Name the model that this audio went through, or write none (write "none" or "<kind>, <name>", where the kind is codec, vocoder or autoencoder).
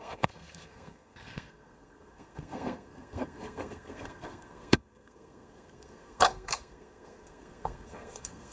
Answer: codec, SNAC